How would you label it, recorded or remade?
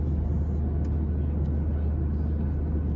recorded